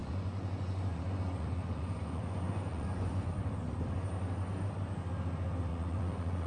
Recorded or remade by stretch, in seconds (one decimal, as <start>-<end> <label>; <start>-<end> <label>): 0.0-3.3 remade; 3.3-5.7 recorded; 5.7-6.5 remade